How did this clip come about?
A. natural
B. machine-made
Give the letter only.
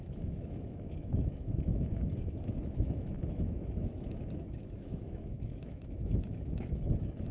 B